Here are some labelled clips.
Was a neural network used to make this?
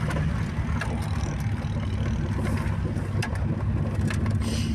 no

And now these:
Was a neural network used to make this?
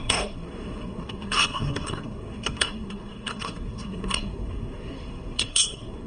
yes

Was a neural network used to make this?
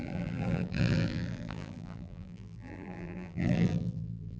yes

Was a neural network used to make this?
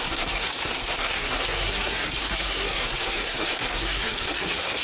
yes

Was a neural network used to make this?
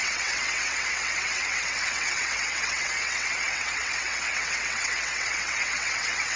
yes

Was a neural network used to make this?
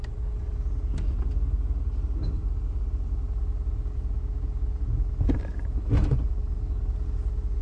no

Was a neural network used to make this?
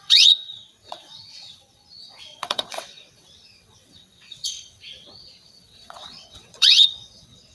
yes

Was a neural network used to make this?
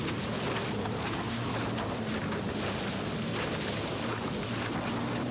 no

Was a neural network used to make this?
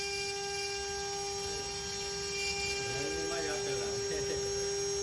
no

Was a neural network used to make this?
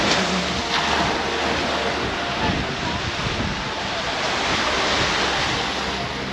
no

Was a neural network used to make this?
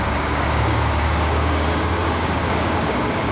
yes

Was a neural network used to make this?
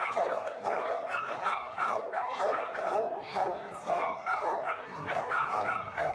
yes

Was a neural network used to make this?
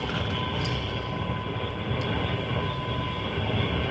no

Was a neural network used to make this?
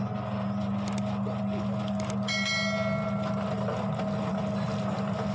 no